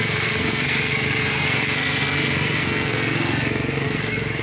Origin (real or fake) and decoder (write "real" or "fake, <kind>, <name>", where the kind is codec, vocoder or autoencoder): fake, codec, SNAC